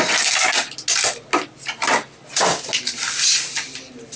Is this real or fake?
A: real